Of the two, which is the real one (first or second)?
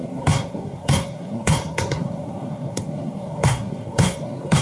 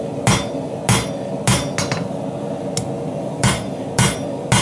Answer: second